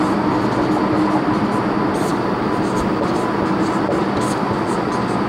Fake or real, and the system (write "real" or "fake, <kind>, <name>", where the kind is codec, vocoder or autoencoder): real